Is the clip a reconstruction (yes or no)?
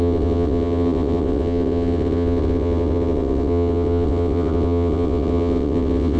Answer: yes